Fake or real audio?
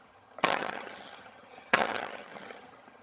fake